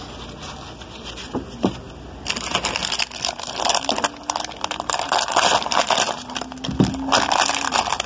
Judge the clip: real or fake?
real